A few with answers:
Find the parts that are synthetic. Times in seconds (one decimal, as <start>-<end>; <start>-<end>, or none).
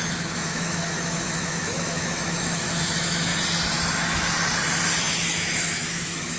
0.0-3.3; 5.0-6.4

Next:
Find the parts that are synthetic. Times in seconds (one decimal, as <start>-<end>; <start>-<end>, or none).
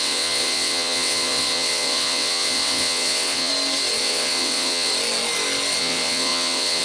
0.0-3.5; 4.0-4.9; 5.8-6.8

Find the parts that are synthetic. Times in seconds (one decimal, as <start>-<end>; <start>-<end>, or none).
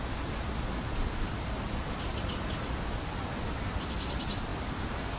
none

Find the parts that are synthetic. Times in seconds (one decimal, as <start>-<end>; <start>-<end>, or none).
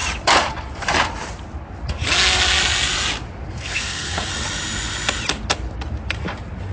3.5-4.3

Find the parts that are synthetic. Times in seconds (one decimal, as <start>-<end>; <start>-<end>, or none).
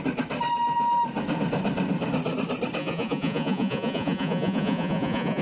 2.8-5.4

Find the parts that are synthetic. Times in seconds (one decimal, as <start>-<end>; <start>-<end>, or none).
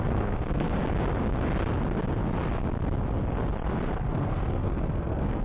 0.0-0.8; 4.0-5.4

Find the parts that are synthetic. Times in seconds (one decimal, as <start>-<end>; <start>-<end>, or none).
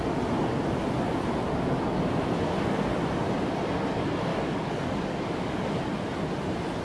4.3-5.8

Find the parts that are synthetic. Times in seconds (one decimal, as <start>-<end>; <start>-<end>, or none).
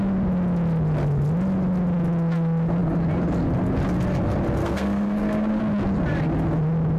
4.6-5.6